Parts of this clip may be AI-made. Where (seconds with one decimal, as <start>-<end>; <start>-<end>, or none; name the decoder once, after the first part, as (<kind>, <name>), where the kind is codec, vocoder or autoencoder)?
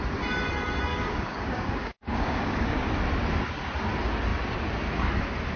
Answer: 0.9-2.9 (codec, DAC)